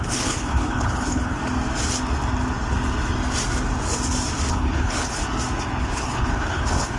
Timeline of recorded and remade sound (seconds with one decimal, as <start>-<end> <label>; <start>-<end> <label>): 0.0-1.4 remade; 1.4-4.5 recorded; 4.5-5.2 remade; 5.2-5.8 recorded; 5.8-7.0 remade